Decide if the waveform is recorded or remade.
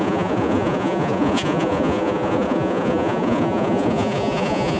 remade